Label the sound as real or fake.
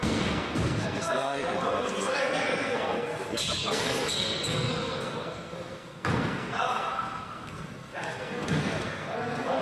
fake